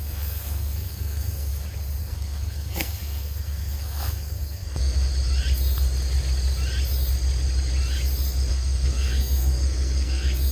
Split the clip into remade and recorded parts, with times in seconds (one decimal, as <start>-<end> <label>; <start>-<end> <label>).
0.0-1.5 remade; 1.5-2.0 recorded; 2.0-5.1 remade; 5.1-8.5 recorded; 8.5-10.5 remade